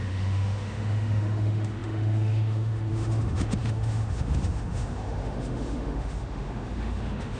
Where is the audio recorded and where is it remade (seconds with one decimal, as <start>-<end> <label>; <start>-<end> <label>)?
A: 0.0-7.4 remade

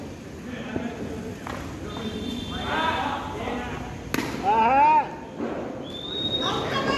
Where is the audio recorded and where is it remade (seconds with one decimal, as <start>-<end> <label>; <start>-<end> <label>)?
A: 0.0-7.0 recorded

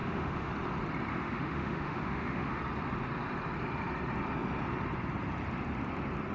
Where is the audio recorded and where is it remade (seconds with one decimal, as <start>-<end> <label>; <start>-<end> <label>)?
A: 0.0-0.5 remade; 0.5-1.1 recorded; 1.1-2.6 remade; 2.6-6.3 recorded

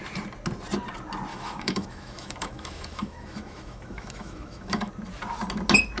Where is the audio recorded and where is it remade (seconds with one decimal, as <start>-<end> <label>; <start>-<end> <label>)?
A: 0.0-1.3 recorded; 1.3-4.9 remade; 4.9-6.0 recorded